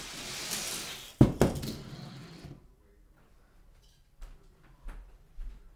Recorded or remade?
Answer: recorded